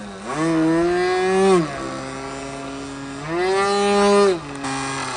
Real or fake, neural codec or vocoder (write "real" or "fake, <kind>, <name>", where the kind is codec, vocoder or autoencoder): real